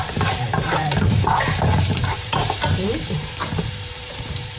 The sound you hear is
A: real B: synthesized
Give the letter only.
B